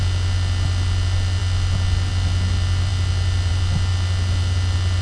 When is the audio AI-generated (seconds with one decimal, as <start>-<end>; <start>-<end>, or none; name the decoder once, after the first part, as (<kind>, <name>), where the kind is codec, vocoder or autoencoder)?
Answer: none